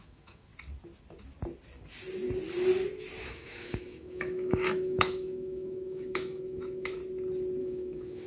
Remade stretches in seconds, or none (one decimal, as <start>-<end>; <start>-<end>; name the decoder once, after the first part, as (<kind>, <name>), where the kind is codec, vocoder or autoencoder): 0.0-0.5 (autoencoder, DAC-VAE); 3.2-7.0; 7.6-8.3

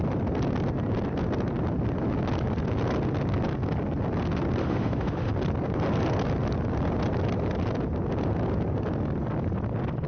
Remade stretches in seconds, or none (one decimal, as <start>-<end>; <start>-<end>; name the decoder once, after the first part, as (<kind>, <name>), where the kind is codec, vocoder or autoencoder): 4.6-5.3 (autoencoder, DAC-VAE)

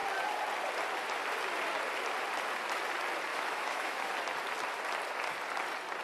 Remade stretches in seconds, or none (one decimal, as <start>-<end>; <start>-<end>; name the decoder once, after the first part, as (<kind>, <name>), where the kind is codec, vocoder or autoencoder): 3.3-4.1 (autoencoder, DAC-VAE)

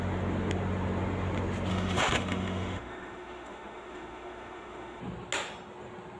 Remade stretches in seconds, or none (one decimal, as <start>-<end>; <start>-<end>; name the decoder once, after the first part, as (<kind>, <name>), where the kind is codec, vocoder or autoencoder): 1.7-5.0 (autoencoder, DAC-VAE)

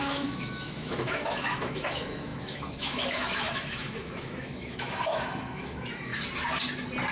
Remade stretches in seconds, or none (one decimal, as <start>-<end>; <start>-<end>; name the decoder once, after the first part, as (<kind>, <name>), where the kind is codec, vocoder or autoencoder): 0.0-6.1 (autoencoder, DAC-VAE)

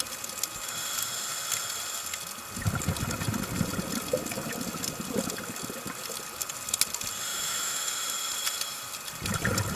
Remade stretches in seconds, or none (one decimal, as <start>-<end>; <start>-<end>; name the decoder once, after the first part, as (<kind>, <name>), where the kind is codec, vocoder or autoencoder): 7.3-7.9 (autoencoder, DAC-VAE)